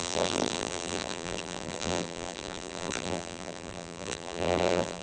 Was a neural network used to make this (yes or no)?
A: yes